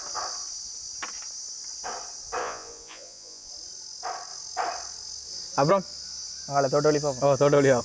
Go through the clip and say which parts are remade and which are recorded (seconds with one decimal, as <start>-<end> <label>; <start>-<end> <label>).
0.0-2.4 recorded; 2.4-3.5 remade; 3.5-7.8 recorded